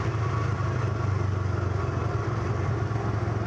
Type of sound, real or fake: real